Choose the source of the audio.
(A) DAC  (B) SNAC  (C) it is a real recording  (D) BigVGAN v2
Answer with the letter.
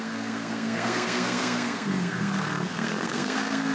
B